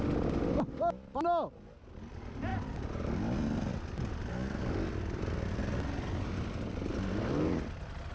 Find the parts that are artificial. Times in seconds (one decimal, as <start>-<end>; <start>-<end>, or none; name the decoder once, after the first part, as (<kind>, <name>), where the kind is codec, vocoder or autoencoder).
none